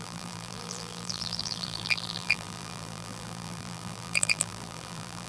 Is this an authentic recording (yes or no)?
no